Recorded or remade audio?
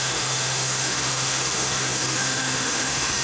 remade